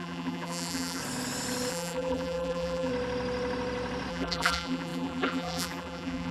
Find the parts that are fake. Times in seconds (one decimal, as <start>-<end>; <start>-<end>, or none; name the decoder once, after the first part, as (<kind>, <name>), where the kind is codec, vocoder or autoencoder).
0.0-1.0 (vocoder, BigVGAN v2); 1.7-2.9; 4.1-6.3

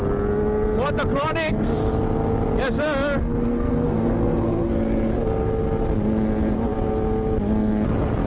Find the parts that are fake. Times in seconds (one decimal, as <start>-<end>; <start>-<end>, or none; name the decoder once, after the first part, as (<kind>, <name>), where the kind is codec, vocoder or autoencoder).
3.2-4.7 (codec, SNAC)

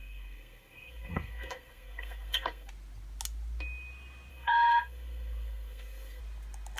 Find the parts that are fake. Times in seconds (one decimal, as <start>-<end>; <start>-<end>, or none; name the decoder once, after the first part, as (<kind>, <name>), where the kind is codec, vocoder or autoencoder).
0.0-2.7 (codec, SNAC); 4.3-6.2